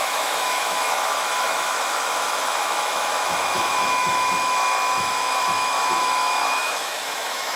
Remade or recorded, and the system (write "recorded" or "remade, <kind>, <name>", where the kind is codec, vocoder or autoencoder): remade, autoencoder, DAC-VAE